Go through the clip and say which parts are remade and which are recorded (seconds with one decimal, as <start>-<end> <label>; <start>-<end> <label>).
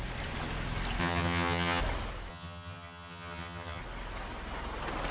0.0-1.0 recorded; 1.0-1.8 remade; 1.8-2.3 recorded; 2.3-3.8 remade; 3.8-5.1 recorded